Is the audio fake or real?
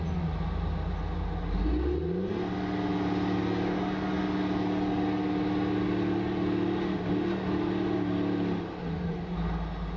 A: real